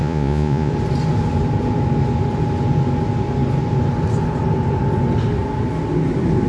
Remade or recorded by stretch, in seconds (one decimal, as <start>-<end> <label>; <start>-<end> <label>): 0.0-0.7 remade; 0.7-6.5 recorded